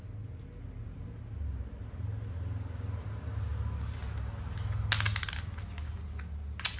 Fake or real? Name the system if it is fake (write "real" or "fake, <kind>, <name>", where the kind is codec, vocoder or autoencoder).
real